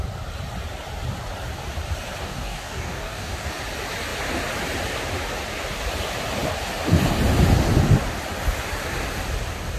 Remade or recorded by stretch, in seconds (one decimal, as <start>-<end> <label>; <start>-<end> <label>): 0.0-2.2 recorded; 2.2-3.5 remade; 3.5-9.8 recorded